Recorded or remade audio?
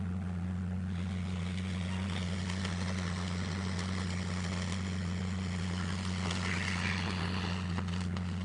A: recorded